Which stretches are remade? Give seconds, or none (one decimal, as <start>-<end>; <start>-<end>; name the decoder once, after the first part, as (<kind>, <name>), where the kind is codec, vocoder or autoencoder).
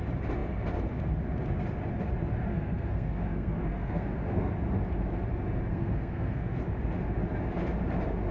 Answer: 2.5-4.5 (codec, SNAC); 5.7-6.6